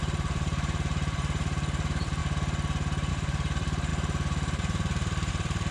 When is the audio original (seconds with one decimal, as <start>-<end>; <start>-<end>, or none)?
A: 2.2-3.1

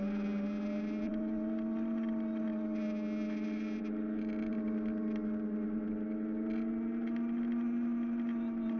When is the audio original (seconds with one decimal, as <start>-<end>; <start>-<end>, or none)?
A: 0.0-8.8

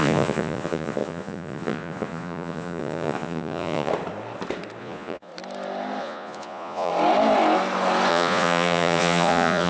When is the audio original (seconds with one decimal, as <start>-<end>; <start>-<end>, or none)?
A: 3.9-4.8; 5.3-6.0; 6.9-8.1

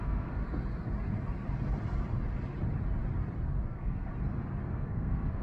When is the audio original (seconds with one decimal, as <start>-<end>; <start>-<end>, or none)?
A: 0.4-3.6; 4.1-4.7

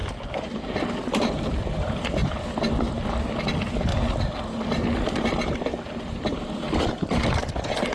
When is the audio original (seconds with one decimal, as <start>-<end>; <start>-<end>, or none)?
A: 2.8-3.9; 7.5-7.9

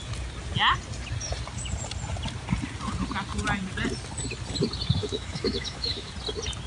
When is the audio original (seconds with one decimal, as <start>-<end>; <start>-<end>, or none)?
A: 0.0-5.0; 6.1-6.7

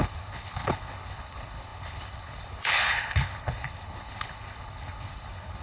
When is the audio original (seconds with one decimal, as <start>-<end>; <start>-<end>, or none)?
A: none